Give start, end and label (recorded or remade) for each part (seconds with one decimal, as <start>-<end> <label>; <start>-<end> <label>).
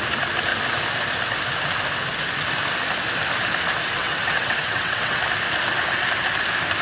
0.0-4.0 recorded; 4.0-5.2 remade; 5.2-6.8 recorded